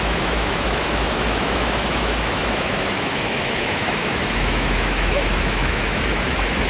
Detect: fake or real fake